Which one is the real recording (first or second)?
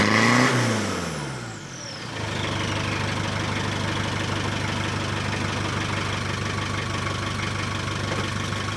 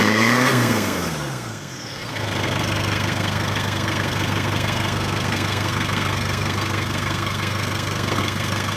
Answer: first